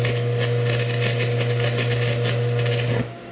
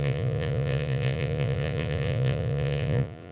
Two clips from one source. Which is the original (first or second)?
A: first